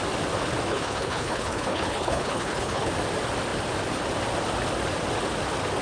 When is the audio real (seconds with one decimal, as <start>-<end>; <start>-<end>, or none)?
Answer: 0.0-0.7; 2.9-5.8